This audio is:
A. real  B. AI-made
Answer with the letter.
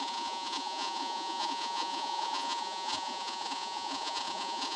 B